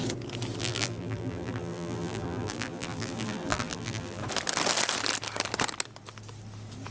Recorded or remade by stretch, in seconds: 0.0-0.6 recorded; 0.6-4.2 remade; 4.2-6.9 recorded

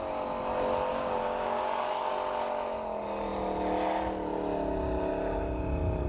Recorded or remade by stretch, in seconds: 0.0-0.9 recorded; 0.9-2.1 remade; 2.1-6.1 recorded

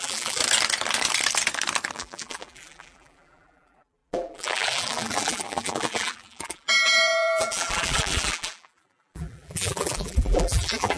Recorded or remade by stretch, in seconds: 0.0-0.4 remade; 0.4-1.9 recorded; 1.9-11.0 remade

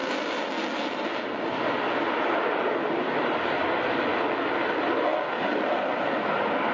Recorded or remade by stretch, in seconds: 0.0-6.7 recorded

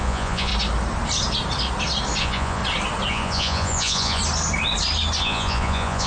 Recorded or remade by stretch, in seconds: 0.0-0.5 remade; 0.5-2.2 recorded; 2.2-2.6 remade; 2.6-3.1 recorded; 3.1-4.2 remade; 4.2-5.2 recorded; 5.2-6.1 remade

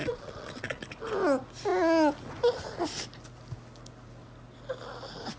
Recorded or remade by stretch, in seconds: 0.0-0.8 remade; 0.8-5.4 recorded